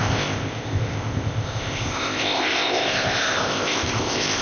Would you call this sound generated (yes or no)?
yes